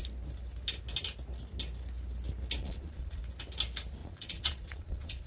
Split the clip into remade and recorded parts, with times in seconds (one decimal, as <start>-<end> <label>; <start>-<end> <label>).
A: 0.0-2.6 recorded; 2.6-3.2 remade; 3.2-4.0 recorded; 4.0-5.3 remade